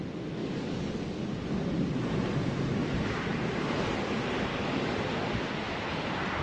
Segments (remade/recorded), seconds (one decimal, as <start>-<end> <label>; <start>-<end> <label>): 0.0-0.4 recorded; 0.4-0.9 remade; 0.9-4.5 recorded; 4.5-5.0 remade; 5.0-6.4 recorded